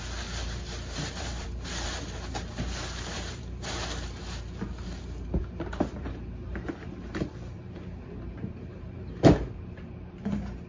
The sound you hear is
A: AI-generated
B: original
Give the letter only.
A